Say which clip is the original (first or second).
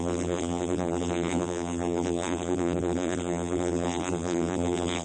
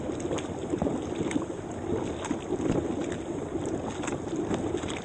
second